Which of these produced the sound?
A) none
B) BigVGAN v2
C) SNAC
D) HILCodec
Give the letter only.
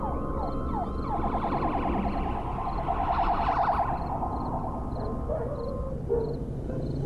A